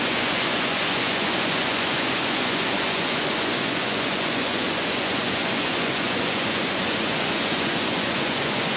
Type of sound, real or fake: fake